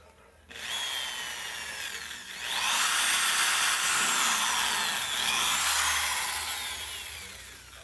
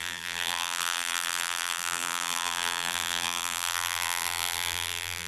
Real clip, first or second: first